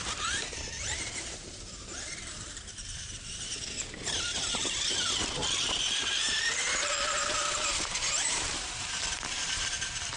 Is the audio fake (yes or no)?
yes